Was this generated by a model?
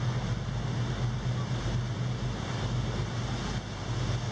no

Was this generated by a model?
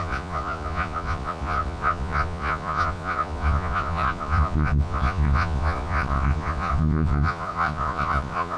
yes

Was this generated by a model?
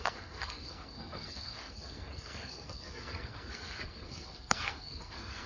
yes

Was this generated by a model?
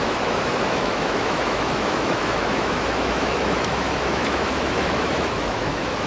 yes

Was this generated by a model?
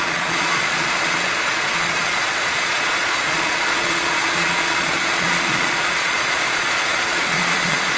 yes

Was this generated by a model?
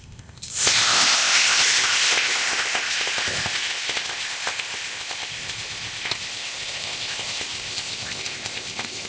yes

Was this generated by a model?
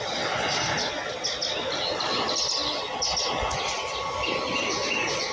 no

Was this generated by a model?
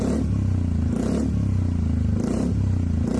no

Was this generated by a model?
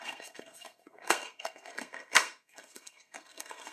yes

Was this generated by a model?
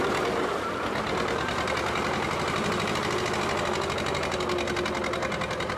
no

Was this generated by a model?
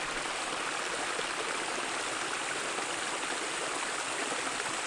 no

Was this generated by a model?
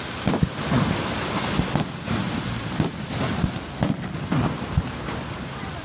no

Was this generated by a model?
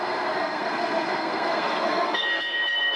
yes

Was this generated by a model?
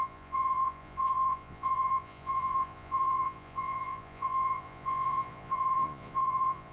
yes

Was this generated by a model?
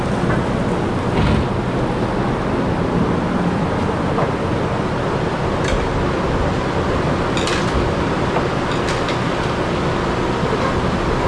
no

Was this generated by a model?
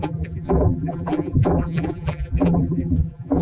yes